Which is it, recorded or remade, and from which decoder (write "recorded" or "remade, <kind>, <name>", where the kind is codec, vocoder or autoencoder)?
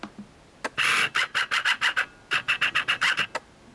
recorded